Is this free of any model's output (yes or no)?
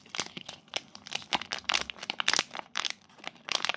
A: no